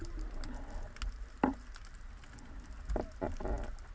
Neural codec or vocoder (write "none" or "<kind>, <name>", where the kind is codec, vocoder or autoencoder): none